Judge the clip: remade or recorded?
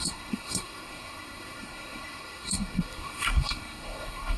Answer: remade